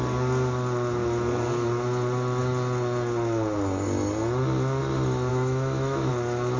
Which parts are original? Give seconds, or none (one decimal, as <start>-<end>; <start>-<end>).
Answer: 0.0-5.3; 6.1-6.6

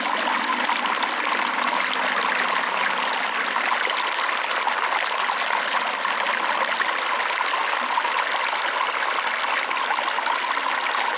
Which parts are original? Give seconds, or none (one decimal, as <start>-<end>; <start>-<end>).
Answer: 0.0-11.2

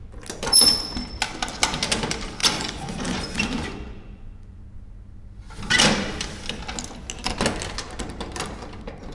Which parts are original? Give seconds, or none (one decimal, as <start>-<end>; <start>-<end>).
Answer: 0.0-2.4; 4.6-9.1

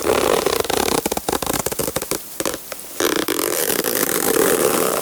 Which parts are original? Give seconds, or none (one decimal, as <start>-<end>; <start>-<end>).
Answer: 0.0-1.8